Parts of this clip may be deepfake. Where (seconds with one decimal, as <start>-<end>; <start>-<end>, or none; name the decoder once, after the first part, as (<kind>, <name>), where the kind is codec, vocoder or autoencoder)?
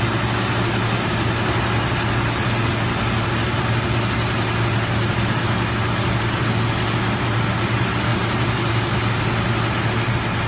none